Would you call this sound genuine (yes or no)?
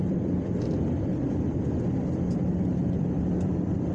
no